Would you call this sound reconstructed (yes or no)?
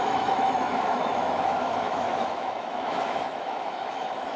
yes